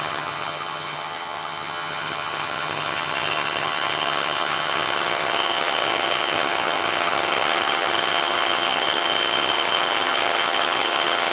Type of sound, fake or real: fake